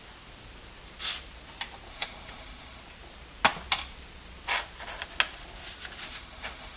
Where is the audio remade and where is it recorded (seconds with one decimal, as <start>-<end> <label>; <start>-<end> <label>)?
0.0-1.9 recorded; 1.9-2.8 remade; 2.8-6.0 recorded; 6.0-6.8 remade